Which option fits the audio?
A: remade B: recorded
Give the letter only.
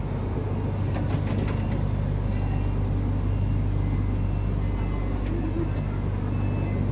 B